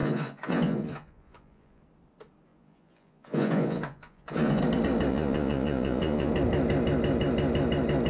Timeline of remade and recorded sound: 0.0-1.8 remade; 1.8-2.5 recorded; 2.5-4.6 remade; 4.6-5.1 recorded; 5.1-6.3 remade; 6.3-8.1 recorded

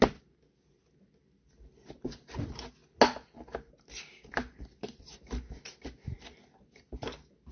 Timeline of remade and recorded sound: 0.0-7.5 recorded

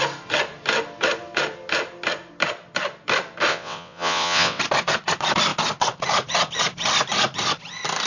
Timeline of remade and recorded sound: 0.0-3.5 recorded; 3.5-4.6 remade; 4.6-8.1 recorded